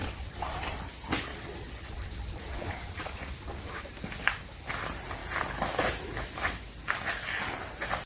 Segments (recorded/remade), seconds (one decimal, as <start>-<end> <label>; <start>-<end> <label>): 0.0-0.8 remade; 0.8-1.3 recorded; 1.3-3.8 remade; 3.8-8.1 recorded